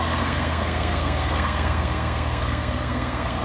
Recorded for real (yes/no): no